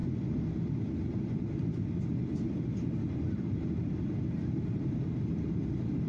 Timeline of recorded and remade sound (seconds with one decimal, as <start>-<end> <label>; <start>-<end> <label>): 0.0-6.1 recorded